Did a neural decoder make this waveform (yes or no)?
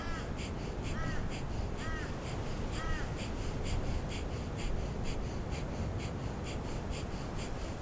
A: no